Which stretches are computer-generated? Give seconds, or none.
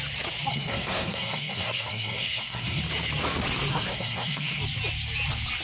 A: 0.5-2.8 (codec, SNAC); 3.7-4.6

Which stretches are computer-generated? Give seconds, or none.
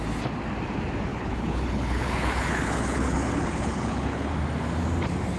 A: 1.1-4.3 (codec, HILCodec)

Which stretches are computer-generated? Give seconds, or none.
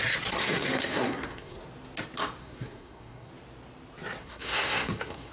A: 0.4-1.6 (codec, SNAC); 2.4-3.3; 4.2-5.3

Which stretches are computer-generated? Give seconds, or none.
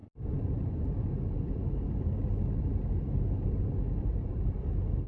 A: 0.0-1.1 (vocoder, BigVGAN v2); 4.1-4.6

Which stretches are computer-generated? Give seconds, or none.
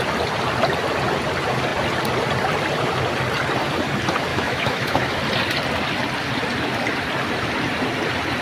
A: 4.3-5.2 (autoencoder, DAC-VAE)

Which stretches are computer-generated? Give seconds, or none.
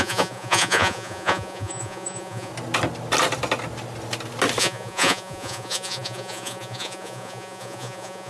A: 0.0-2.5 (vocoder, Vocos); 4.6-8.3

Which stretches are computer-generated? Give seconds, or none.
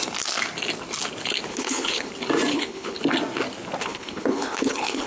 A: 1.5-2.1 (codec, HILCodec); 2.5-3.0; 3.8-5.1